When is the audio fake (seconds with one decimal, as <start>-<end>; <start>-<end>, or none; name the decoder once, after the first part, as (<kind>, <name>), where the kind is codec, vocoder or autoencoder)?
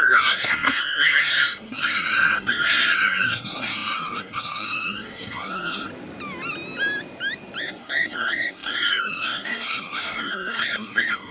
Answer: 0.0-5.9 (codec, SNAC); 7.6-11.3